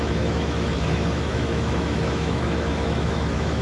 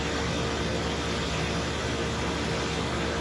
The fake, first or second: first